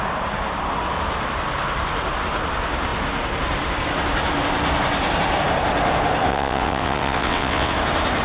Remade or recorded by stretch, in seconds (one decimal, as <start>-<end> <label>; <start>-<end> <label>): 0.0-6.3 recorded; 6.3-7.7 remade; 7.7-8.2 recorded

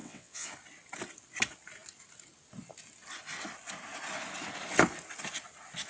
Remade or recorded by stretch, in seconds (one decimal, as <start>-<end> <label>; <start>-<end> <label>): 0.0-0.5 remade; 0.5-5.9 recorded

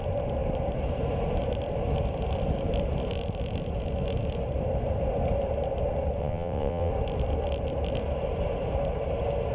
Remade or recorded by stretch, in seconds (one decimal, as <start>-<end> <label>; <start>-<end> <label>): 0.0-6.2 recorded; 6.2-6.9 remade; 6.9-9.5 recorded

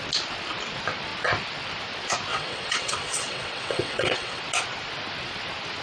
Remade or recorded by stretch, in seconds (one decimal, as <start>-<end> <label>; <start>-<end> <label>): 0.0-2.3 recorded; 2.3-4.4 remade; 4.4-5.8 recorded

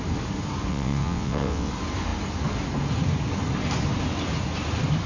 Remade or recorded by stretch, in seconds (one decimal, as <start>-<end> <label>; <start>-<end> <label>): 0.0-0.7 recorded; 0.7-1.7 remade; 1.7-5.1 recorded

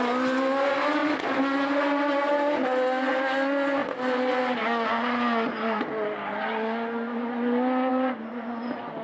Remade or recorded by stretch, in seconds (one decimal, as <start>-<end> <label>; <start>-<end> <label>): 0.0-9.0 recorded

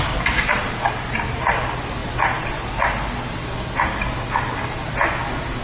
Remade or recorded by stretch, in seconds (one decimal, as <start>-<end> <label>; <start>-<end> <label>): 0.0-5.6 recorded

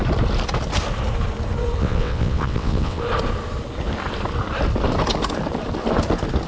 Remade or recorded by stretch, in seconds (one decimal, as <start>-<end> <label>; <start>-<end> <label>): 0.0-1.8 recorded; 1.8-3.0 remade; 3.0-6.5 recorded